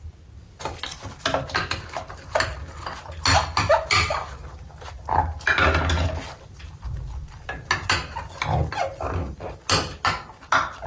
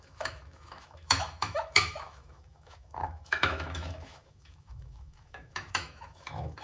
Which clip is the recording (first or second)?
first